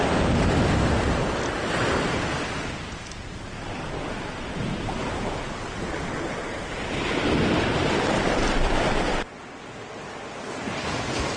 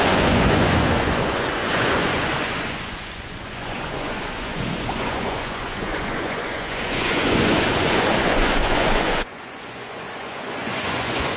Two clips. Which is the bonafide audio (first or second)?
first